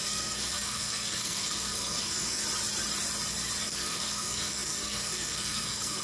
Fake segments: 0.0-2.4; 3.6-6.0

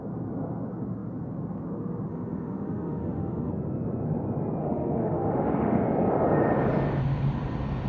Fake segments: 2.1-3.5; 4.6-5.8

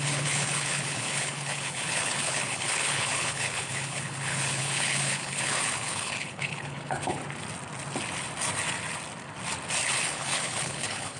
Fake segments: 0.0-7.2; 10.1-11.2

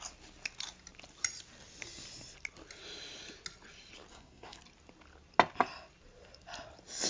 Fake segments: 4.1-4.6

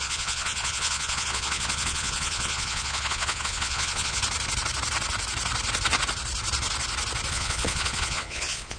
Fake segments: 0.0-4.2; 7.3-8.8

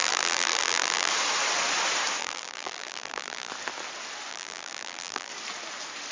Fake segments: 0.0-1.1; 2.2-3.5; 4.3-5.3